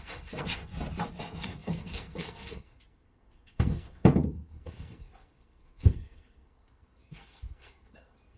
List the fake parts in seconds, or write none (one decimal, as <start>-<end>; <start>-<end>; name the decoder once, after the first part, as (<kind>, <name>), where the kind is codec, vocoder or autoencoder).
0.0-0.7 (codec, SNAC); 1.2-8.4